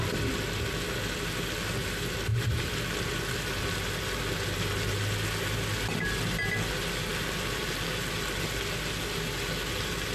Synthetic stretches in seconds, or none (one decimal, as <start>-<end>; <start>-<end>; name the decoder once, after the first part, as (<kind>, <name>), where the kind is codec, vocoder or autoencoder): 2.3-5.4 (vocoder, BigVGAN v2)